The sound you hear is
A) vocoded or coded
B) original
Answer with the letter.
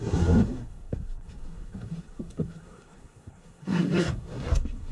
A